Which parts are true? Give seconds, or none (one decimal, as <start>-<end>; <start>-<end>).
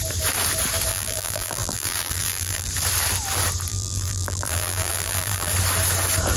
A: 0.0-0.9; 2.7-3.7; 5.5-6.4